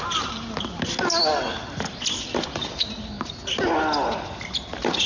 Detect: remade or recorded recorded